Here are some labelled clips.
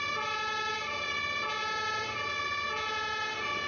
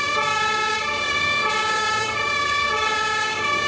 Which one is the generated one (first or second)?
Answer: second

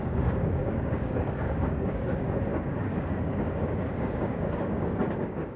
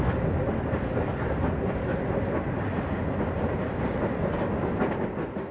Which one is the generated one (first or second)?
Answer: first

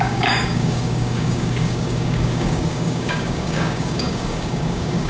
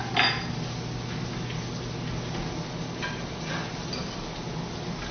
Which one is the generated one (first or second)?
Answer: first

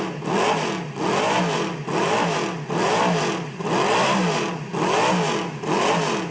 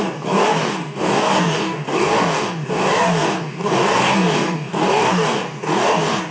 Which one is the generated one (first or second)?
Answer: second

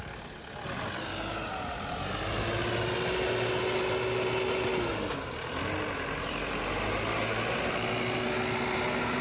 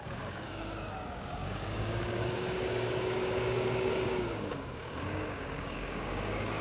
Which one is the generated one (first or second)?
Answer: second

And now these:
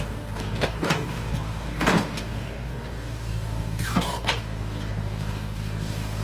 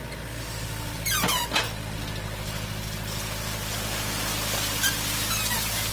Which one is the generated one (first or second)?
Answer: first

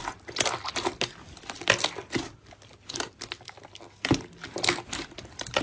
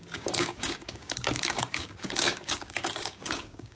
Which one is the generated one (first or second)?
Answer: second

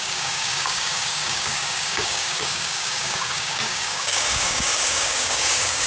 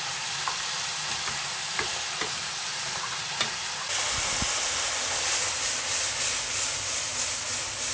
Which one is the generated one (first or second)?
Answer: first